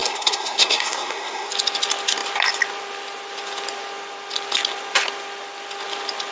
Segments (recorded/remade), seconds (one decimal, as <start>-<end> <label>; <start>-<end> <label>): 0.0-1.5 remade; 1.5-6.3 recorded